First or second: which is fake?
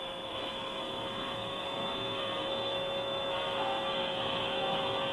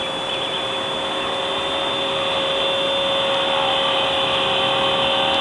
first